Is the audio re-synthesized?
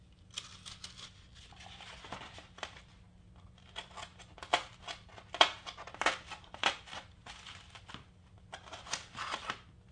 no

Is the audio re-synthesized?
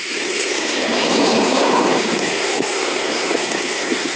yes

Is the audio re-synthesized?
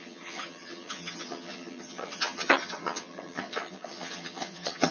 yes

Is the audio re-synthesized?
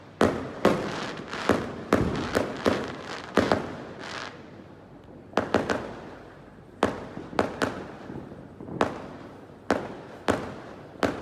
no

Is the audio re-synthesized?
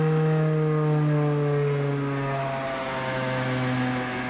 no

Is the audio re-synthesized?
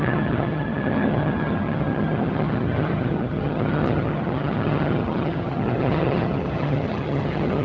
yes